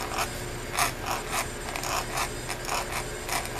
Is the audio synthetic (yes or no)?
no